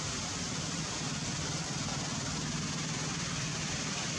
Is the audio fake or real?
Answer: real